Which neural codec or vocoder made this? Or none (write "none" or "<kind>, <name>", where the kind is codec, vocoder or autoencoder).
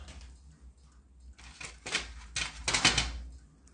none